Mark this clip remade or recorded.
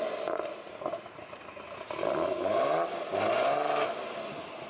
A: recorded